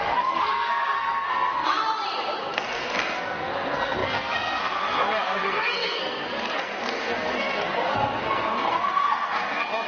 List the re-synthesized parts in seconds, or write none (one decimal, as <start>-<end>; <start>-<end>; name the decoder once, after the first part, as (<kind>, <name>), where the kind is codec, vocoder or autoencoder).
0.0-1.8 (codec, SNAC); 2.4-9.9